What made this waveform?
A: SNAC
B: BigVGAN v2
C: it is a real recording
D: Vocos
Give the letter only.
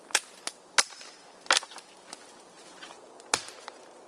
C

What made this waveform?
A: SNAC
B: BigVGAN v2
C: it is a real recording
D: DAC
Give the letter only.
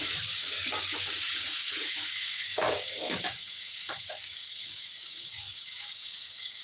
D